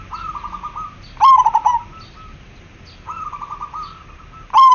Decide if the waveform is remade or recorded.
recorded